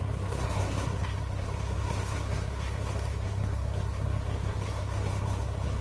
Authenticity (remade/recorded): remade